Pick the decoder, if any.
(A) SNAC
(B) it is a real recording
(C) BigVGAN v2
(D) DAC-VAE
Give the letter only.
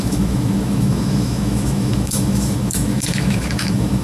D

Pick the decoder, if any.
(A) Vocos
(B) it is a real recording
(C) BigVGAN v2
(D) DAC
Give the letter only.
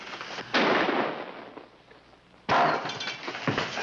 B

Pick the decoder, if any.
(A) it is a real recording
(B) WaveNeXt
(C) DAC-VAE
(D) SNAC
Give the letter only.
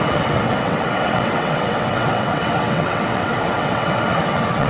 B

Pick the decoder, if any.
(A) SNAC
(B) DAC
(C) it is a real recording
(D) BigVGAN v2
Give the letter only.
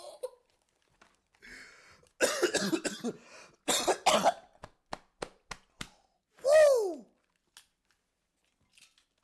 C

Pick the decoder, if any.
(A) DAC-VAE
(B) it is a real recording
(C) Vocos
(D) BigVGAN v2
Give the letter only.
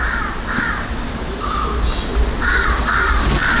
B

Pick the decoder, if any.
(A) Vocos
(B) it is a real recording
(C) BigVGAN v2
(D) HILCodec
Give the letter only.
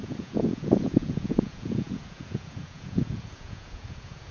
A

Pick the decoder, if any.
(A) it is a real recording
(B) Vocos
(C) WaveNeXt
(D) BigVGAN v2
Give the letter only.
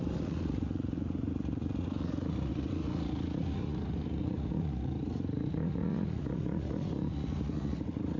B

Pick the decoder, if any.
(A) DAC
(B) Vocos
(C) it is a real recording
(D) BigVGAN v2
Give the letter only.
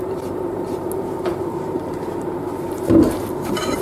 D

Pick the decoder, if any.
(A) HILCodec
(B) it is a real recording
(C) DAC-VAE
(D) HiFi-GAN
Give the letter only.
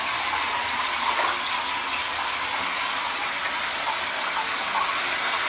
B